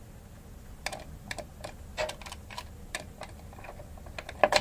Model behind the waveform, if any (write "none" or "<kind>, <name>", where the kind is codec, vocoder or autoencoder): none